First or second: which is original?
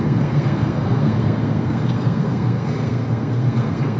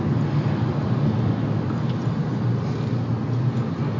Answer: second